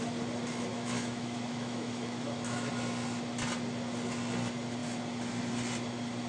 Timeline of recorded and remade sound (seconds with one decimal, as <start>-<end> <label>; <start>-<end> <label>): 0.0-0.7 recorded; 0.7-2.7 remade; 2.7-6.3 recorded